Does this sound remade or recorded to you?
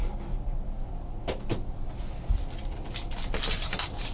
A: recorded